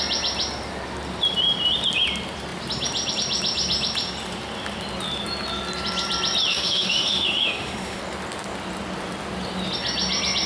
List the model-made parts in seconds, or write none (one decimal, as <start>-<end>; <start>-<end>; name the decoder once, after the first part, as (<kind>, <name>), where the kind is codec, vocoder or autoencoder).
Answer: 6.5-8.0 (autoencoder, DAC-VAE)